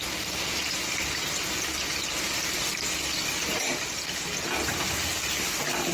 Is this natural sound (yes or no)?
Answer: yes